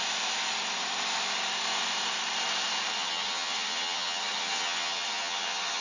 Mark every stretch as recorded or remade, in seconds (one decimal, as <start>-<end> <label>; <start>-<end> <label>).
0.0-2.9 recorded; 2.9-5.8 remade

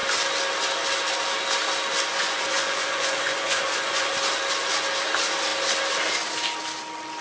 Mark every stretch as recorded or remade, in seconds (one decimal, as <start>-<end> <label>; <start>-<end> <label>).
0.0-2.1 recorded; 2.1-4.1 remade; 4.1-7.2 recorded

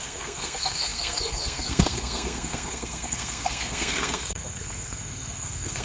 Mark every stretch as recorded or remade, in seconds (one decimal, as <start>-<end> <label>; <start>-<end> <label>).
0.0-5.8 remade

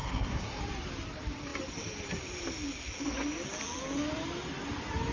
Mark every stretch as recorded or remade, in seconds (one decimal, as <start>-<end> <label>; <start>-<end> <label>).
0.0-0.6 remade; 0.6-5.1 recorded

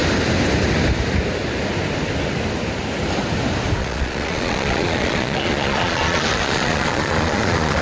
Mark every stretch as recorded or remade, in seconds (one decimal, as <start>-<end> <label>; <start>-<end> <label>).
0.0-3.8 recorded; 3.8-7.8 remade